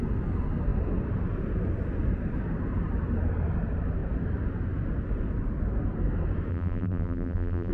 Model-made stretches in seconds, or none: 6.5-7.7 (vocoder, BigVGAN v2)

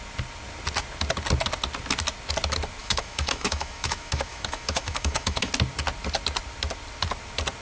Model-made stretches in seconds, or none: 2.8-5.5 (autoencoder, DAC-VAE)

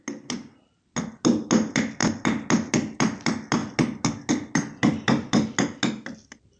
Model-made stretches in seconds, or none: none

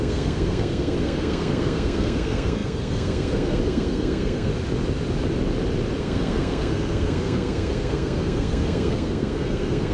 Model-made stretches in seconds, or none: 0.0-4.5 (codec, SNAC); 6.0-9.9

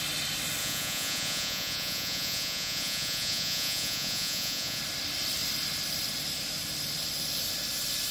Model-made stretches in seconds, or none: 0.6-4.8 (vocoder, Vocos)